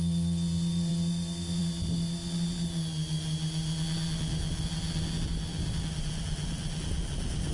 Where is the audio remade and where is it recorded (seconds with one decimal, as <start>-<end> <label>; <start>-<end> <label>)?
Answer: 0.0-7.5 recorded